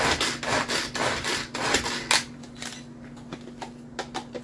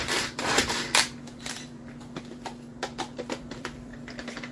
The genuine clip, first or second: first